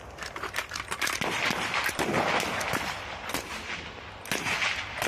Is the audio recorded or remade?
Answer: recorded